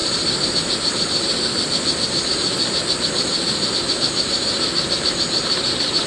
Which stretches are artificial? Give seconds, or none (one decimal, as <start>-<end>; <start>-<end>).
none